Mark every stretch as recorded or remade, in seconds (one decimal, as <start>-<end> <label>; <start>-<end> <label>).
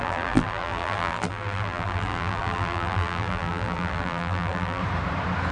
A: 0.0-4.8 remade; 4.8-5.5 recorded